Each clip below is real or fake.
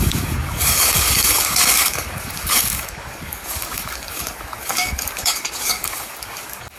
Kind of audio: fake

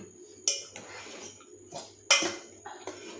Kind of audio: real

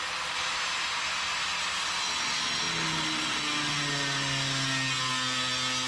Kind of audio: real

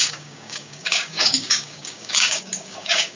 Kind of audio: fake